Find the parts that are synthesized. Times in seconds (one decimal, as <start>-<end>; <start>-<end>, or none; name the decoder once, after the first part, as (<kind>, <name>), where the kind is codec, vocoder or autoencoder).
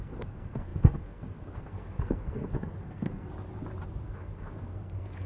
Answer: 0.0-3.3 (codec, SNAC); 4.0-5.3